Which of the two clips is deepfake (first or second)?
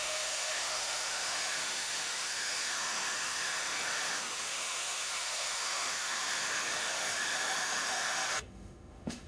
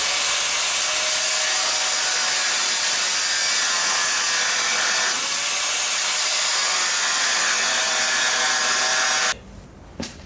first